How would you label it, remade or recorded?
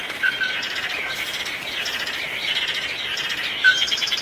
remade